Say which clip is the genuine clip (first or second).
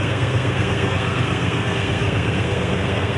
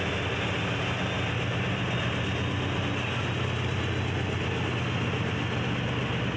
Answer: second